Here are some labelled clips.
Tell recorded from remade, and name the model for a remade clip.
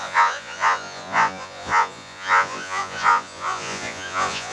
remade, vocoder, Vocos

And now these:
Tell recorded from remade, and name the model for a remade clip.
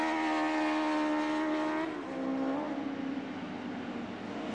recorded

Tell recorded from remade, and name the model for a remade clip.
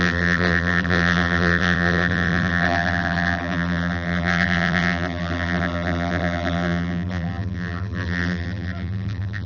remade, vocoder, BigVGAN v2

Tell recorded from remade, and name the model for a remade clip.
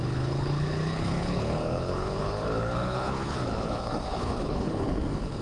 remade, codec, HILCodec